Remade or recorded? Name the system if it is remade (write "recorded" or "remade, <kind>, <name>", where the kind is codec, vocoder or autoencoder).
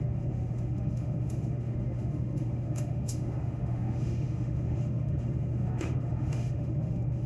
remade, autoencoder, DAC-VAE